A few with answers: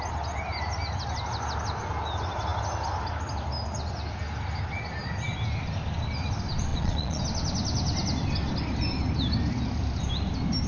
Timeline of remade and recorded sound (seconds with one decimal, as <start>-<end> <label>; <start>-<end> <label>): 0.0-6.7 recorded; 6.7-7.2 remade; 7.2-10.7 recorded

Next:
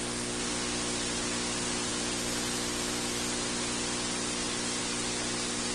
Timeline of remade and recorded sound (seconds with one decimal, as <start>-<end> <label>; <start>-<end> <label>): 0.0-5.7 recorded

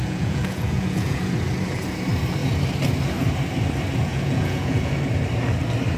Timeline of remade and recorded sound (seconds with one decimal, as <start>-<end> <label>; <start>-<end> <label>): 0.0-1.2 remade; 1.2-4.1 recorded; 4.1-5.0 remade; 5.0-6.0 recorded

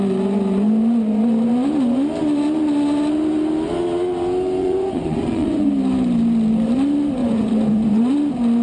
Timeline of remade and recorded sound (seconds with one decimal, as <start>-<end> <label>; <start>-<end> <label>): 0.0-4.6 recorded; 4.6-5.7 remade; 5.7-7.2 recorded; 7.2-8.1 remade; 8.1-8.6 recorded